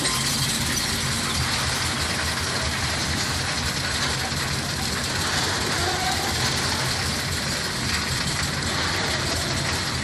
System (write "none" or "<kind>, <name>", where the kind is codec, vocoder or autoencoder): none